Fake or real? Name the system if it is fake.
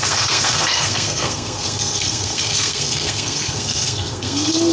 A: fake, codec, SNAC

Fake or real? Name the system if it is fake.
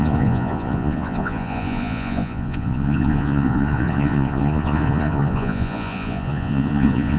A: fake, vocoder, Vocos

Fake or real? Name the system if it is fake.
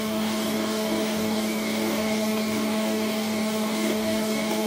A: fake, codec, DAC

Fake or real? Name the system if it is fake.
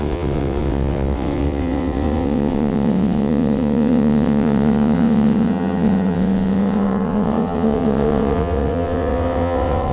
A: fake, vocoder, WaveNeXt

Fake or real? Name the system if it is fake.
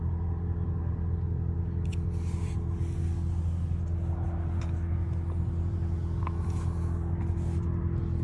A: real